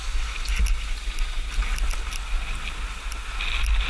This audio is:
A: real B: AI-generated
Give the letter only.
A